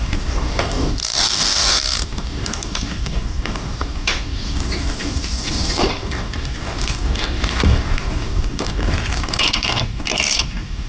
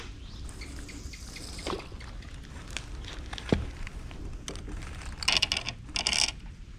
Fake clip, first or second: first